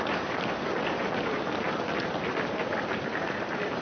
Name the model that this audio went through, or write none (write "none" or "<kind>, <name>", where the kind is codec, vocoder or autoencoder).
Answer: none